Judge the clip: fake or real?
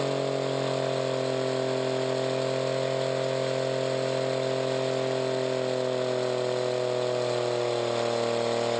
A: real